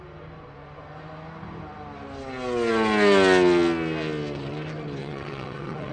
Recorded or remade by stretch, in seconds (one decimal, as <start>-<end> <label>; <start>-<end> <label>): 0.0-5.0 recorded; 5.0-5.9 remade